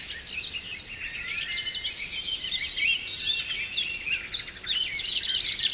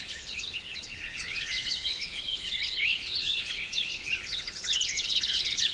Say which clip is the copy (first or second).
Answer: second